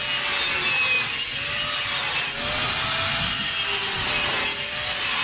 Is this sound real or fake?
real